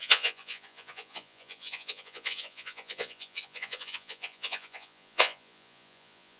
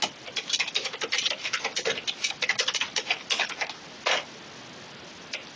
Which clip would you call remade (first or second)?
first